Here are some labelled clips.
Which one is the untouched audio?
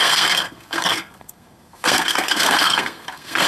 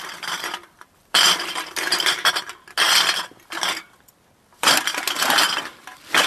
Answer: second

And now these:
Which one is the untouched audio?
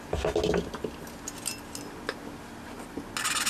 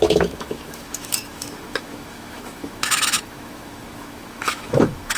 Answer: first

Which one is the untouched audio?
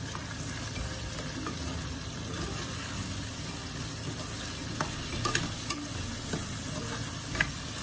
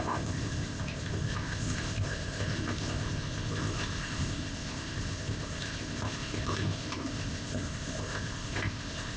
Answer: first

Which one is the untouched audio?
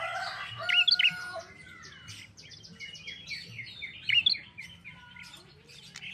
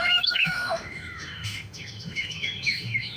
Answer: first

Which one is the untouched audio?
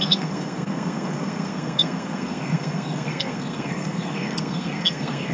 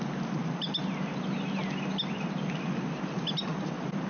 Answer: second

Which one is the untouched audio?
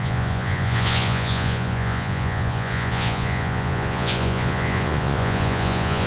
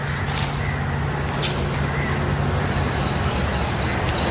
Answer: second